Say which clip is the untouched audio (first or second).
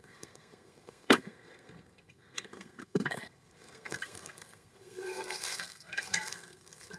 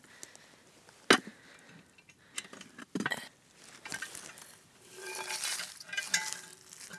second